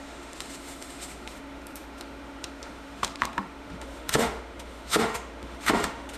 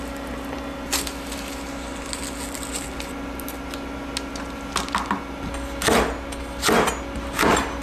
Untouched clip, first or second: second